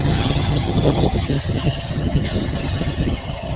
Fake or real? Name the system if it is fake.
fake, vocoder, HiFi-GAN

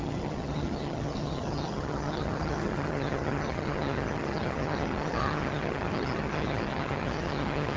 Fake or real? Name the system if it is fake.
fake, vocoder, HiFi-GAN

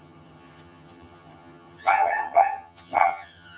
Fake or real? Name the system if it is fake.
fake, vocoder, HiFi-GAN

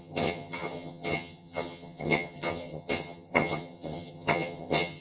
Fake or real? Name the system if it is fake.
fake, vocoder, HiFi-GAN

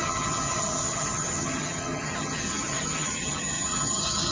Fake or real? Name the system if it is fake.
fake, vocoder, HiFi-GAN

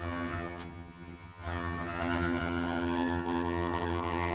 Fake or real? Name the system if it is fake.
fake, vocoder, HiFi-GAN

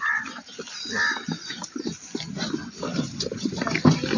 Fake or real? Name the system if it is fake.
real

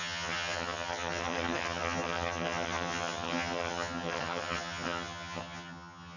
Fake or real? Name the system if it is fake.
fake, vocoder, HiFi-GAN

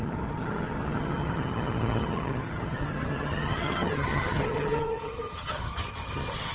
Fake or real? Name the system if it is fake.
fake, vocoder, HiFi-GAN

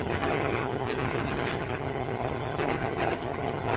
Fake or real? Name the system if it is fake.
fake, vocoder, HiFi-GAN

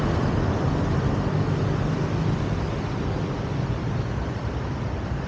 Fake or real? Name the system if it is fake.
real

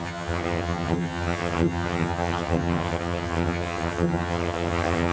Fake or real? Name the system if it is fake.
fake, vocoder, HiFi-GAN